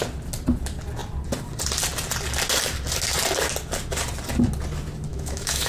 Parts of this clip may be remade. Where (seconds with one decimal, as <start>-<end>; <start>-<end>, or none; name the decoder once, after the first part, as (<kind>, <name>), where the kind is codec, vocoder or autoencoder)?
5.1-5.7 (autoencoder, DAC-VAE)